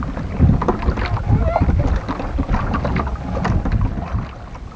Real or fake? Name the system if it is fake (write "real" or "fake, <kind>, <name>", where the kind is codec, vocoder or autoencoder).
real